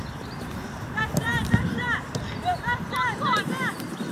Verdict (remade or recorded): remade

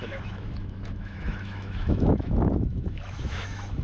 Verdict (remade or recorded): remade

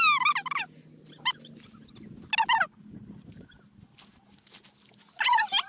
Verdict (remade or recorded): recorded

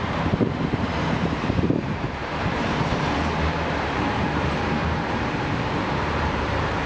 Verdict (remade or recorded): remade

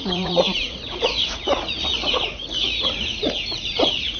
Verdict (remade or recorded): remade